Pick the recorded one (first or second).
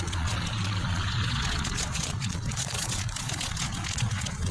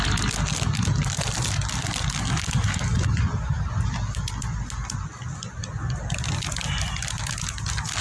second